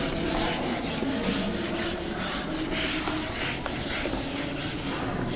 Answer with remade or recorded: recorded